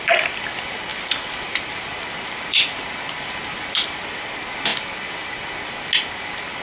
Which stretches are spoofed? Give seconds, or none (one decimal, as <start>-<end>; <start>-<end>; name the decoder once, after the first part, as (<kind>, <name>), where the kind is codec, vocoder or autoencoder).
0.0-4.7 (vocoder, BigVGAN v2)